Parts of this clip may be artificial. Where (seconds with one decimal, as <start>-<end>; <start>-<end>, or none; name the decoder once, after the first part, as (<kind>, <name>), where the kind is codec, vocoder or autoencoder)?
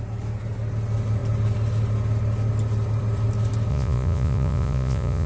3.7-5.3 (vocoder, Vocos)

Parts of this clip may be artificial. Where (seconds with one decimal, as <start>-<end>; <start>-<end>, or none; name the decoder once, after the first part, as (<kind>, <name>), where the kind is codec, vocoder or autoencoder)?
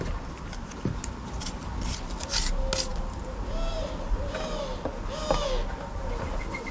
none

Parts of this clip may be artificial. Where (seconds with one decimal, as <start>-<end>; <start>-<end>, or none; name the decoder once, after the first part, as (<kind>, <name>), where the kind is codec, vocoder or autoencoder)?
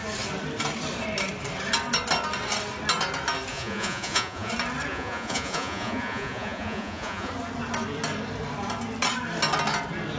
3.5-4.5 (vocoder, Vocos); 4.9-7.3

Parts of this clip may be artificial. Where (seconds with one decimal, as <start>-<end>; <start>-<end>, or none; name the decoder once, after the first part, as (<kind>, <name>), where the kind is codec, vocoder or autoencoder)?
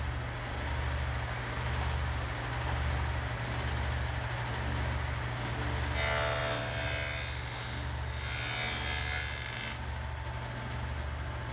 none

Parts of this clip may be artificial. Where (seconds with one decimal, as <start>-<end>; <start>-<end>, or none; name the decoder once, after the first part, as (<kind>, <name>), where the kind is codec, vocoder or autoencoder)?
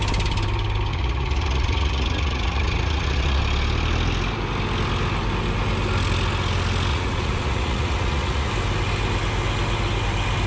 0.9-3.4 (vocoder, Vocos); 6.9-8.5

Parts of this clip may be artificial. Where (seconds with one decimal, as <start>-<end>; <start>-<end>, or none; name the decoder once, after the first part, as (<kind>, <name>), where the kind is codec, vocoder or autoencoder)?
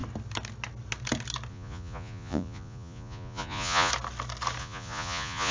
1.5-3.9 (vocoder, Vocos); 4.6-5.5